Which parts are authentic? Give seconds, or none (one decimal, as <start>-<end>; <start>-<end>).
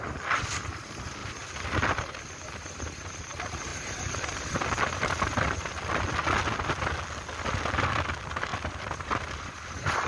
0.0-1.2; 1.9-3.7; 6.0-8.5; 9.5-10.1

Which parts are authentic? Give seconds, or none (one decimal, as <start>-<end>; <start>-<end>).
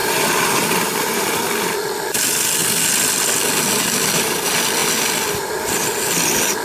1.4-6.6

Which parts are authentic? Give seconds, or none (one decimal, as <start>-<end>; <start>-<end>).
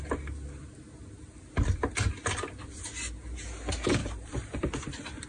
0.0-4.0; 4.6-5.3